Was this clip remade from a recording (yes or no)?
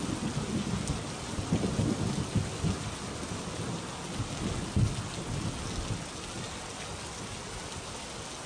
no